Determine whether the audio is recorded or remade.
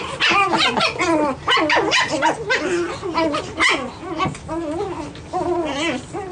recorded